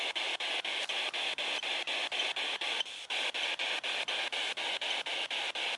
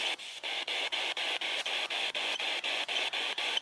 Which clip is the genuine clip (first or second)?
first